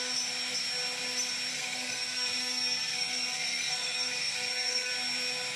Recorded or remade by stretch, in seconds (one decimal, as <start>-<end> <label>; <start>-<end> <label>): 0.0-1.5 recorded; 1.5-4.9 remade; 4.9-5.6 recorded